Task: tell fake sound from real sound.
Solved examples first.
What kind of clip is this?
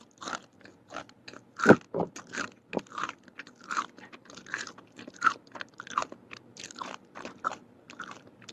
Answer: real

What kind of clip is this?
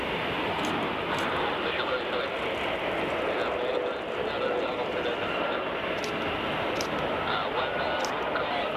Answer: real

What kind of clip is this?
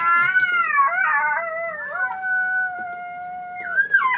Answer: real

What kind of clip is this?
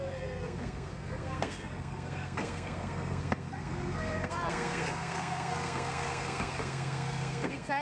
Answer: fake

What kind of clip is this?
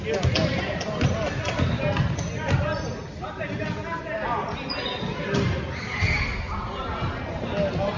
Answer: real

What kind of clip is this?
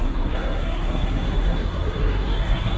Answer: fake